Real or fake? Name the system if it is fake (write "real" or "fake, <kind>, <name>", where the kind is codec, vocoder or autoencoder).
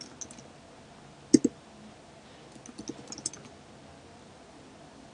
real